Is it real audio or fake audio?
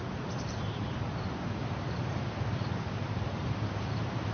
fake